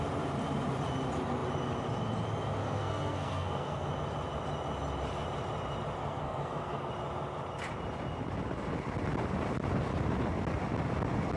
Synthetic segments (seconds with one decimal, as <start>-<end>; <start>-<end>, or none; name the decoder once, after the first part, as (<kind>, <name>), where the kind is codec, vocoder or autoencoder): 2.6-3.9 (codec, SNAC); 6.0-6.9